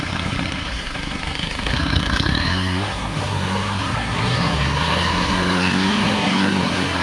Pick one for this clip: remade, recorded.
remade